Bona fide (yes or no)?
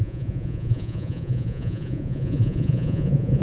no